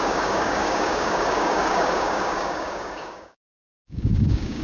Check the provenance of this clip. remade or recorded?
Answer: remade